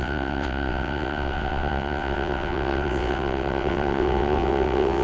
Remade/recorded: remade